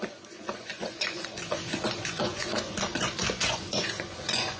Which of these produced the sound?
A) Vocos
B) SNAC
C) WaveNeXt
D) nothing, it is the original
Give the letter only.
A